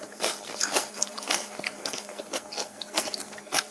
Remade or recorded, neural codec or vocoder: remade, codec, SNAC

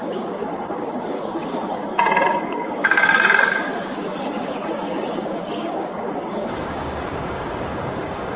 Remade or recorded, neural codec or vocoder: remade, codec, DAC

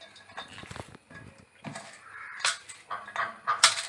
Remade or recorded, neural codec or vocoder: recorded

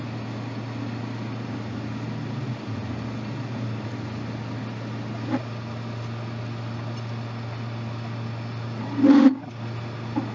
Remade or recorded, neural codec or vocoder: recorded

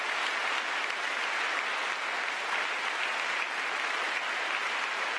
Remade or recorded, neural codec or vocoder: recorded